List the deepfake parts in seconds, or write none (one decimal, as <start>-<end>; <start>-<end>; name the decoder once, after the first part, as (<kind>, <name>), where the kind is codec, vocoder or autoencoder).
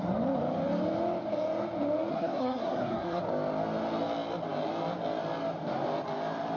2.1-3.2 (codec, SNAC)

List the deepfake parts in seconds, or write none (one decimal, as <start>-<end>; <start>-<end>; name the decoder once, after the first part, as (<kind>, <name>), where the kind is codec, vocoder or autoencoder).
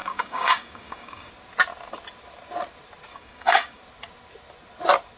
0.0-1.3 (codec, DAC); 3.1-3.8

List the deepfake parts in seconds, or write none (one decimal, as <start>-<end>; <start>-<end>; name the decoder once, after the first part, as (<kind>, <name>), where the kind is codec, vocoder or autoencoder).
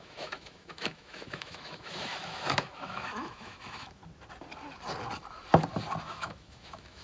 0.0-4.0 (autoencoder, DAC-VAE); 6.0-7.0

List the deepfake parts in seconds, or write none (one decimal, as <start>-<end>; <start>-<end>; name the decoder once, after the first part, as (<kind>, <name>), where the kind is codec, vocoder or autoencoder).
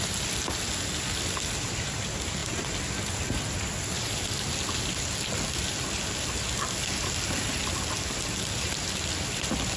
none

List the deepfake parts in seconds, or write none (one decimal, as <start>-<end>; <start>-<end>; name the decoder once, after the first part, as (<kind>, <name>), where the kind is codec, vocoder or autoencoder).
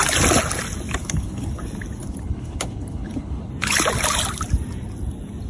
1.0-1.6 (codec, HILCodec); 2.0-3.5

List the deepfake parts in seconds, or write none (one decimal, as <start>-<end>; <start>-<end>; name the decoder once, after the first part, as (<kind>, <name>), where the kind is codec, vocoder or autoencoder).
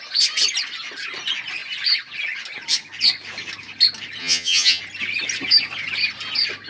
4.2-4.8 (vocoder, HiFi-GAN)